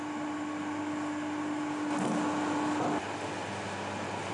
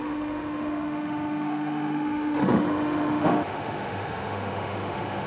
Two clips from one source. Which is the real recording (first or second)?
first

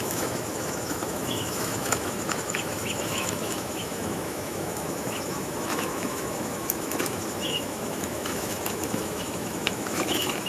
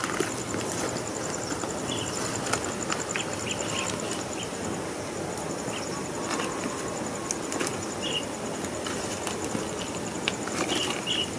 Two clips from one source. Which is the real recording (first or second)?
second